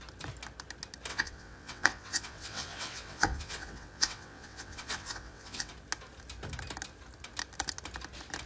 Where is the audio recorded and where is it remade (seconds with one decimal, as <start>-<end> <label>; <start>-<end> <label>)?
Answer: 0.0-1.1 recorded; 1.1-5.7 remade; 5.7-8.5 recorded